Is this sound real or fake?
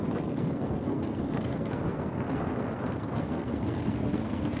fake